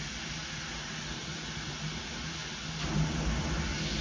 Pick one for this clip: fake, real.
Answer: real